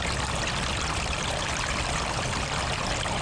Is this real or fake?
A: real